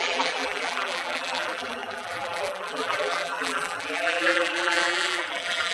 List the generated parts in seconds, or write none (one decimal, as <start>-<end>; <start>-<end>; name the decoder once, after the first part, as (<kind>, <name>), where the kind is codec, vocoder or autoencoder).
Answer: 0.0-5.7 (vocoder, BigVGAN v2)